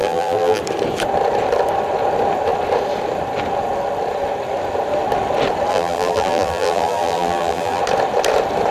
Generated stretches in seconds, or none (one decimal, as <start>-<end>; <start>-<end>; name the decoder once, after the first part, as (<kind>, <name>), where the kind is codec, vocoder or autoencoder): 0.0-0.6 (vocoder, BigVGAN v2); 5.7-7.8